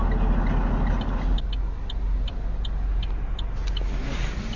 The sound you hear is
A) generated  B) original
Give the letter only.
B